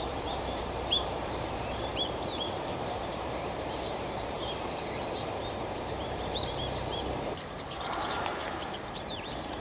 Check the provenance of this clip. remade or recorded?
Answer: remade